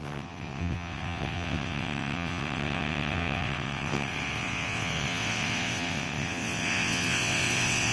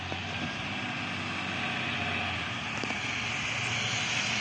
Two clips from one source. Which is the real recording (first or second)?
second